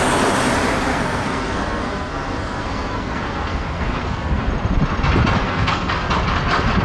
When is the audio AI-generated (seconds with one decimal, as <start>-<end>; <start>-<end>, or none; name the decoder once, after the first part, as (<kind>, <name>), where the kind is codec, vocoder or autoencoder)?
0.9-4.5 (codec, SNAC); 5.4-6.1